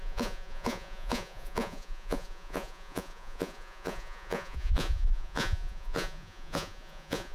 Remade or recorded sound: remade